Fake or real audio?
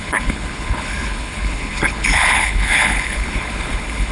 fake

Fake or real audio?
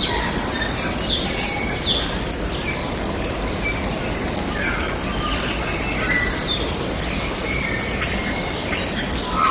real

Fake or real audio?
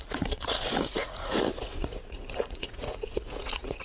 fake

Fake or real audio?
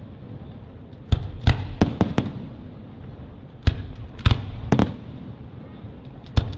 real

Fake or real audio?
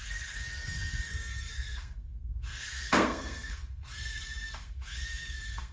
fake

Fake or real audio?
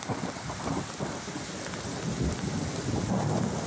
real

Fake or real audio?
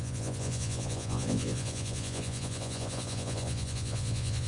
fake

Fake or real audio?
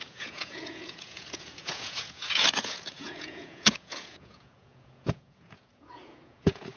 fake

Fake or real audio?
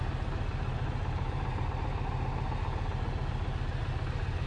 real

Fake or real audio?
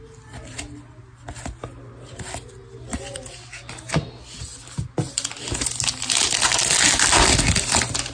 real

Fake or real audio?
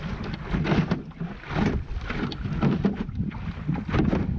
real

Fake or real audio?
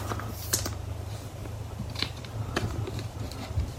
fake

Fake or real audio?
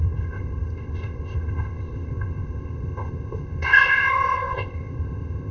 fake